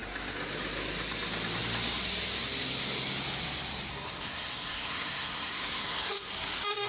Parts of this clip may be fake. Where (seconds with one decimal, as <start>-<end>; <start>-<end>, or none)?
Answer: 3.9-6.3